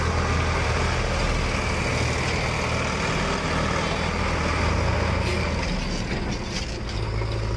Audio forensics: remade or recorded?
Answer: recorded